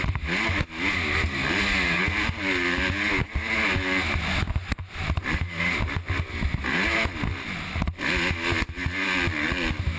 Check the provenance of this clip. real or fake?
real